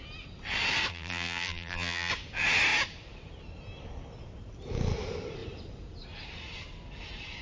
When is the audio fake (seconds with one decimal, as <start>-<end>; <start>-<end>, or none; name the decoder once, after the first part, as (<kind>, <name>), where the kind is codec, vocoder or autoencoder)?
0.9-2.1 (vocoder, BigVGAN v2)